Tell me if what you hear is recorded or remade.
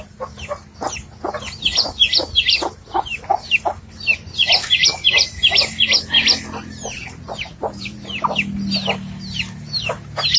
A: recorded